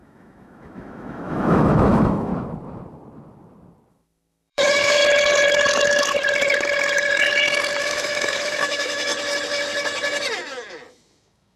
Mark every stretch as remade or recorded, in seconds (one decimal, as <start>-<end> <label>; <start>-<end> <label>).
0.0-2.3 remade; 2.3-3.9 recorded; 3.9-5.0 remade; 5.0-7.8 recorded; 7.8-9.1 remade; 9.1-10.9 recorded; 10.9-11.6 remade